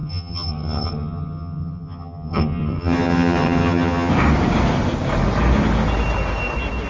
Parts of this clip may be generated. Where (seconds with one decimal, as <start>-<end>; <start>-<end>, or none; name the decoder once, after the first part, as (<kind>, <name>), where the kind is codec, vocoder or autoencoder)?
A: 0.0-4.1 (vocoder, HiFi-GAN)